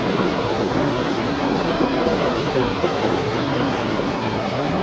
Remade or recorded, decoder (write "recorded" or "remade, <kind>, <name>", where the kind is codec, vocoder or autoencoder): remade, codec, SNAC